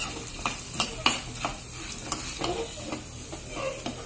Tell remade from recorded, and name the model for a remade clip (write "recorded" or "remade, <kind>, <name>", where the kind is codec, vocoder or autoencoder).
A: recorded